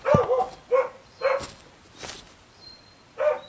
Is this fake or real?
real